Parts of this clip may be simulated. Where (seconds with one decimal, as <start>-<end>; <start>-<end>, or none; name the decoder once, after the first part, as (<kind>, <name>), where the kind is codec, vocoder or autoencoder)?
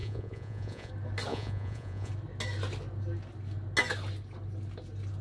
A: 0.0-0.9 (vocoder, Vocos); 1.3-2.1